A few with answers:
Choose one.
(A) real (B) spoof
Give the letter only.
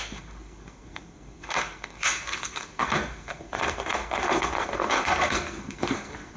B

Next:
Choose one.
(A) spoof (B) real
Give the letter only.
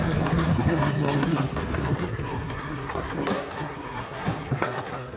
A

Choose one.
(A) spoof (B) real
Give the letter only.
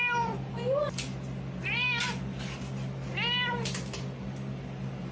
B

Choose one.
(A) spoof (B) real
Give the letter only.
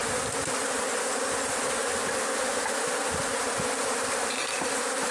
B